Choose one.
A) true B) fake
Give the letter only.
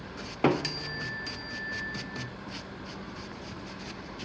A